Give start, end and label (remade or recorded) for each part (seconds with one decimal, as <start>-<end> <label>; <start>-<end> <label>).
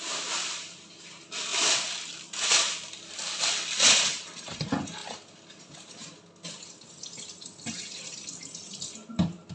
0.0-9.5 recorded